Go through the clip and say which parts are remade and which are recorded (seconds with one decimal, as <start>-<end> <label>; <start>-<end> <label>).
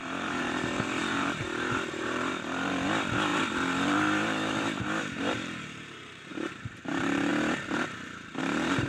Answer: 0.0-7.3 remade; 7.3-8.4 recorded; 8.4-8.9 remade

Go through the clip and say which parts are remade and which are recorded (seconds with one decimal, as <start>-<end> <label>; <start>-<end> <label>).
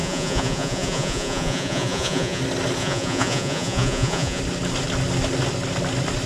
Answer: 0.0-2.4 remade; 2.4-2.8 recorded; 2.8-4.4 remade; 4.4-6.3 recorded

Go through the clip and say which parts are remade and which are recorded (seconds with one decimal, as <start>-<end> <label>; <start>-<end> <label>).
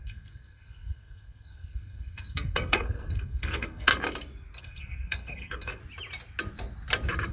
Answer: 0.0-3.9 remade; 3.9-4.6 recorded; 4.6-5.8 remade; 5.8-7.3 recorded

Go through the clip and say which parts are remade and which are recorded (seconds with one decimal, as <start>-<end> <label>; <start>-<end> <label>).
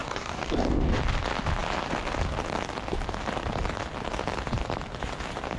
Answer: 0.0-1.0 remade; 1.0-5.6 recorded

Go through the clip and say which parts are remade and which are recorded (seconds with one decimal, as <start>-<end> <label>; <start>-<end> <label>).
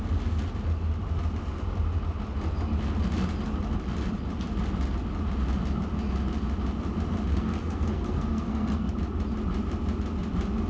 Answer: 0.0-7.3 recorded; 7.3-8.9 remade; 8.9-10.7 recorded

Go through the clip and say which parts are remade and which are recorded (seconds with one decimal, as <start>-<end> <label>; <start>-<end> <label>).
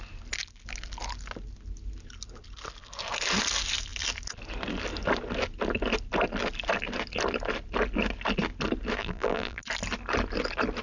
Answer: 0.0-9.0 recorded; 9.0-9.6 remade; 9.6-10.8 recorded